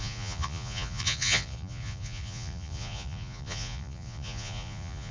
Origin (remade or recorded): remade